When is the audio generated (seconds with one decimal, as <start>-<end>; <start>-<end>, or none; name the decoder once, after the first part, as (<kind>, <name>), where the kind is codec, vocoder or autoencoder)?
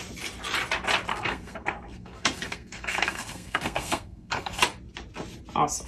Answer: 1.1-4.6 (codec, SNAC)